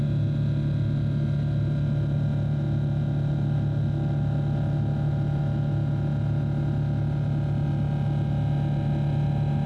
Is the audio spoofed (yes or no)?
no